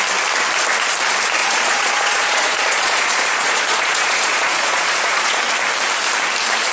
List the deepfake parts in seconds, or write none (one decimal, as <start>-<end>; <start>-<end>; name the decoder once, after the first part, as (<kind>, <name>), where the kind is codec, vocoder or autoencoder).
1.4-5.4 (vocoder, Vocos)